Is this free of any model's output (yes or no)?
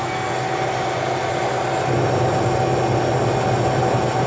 yes